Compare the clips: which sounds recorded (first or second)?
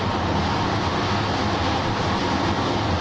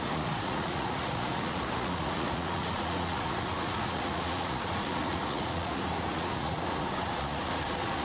first